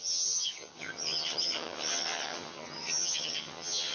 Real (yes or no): no